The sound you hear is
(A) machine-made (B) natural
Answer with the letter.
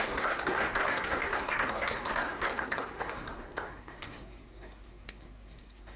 A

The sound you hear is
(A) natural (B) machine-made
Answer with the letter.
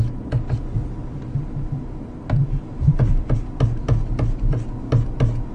A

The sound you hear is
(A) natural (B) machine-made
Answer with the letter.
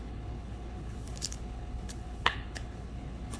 B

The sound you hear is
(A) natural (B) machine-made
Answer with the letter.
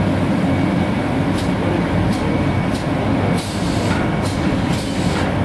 A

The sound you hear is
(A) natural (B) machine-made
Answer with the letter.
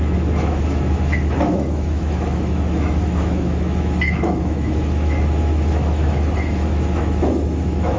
B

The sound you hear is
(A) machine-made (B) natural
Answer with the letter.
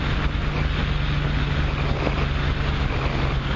B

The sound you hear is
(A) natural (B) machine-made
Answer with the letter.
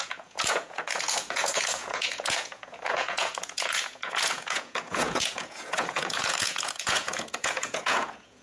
B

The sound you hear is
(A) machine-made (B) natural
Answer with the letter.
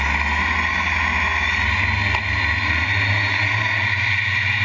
B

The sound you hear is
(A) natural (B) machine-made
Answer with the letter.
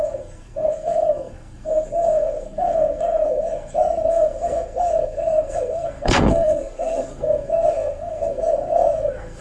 B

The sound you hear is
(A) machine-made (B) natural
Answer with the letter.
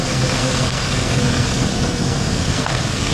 A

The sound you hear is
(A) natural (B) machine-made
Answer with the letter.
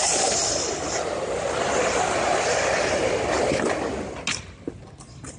A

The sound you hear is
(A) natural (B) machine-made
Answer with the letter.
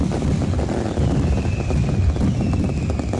A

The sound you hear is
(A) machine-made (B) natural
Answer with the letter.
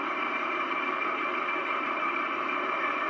A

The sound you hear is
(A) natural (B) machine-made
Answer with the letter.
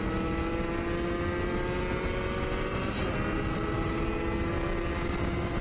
A